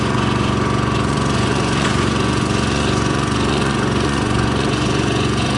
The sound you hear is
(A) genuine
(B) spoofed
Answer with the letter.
B